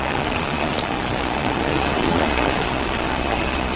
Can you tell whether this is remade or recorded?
remade